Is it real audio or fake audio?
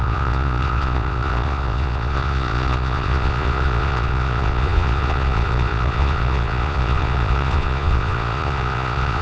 fake